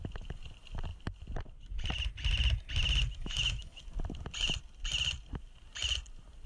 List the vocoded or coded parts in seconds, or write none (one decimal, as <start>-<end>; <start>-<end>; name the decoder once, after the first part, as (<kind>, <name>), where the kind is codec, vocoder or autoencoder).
3.2-3.8 (autoencoder, DAC-VAE)